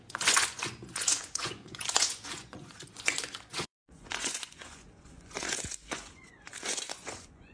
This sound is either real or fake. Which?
fake